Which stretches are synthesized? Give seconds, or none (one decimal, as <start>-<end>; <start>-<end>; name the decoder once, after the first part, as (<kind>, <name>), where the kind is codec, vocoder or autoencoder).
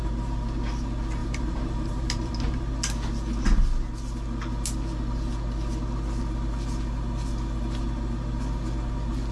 1.2-2.6 (vocoder, BigVGAN v2)